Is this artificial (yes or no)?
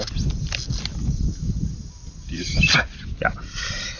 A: no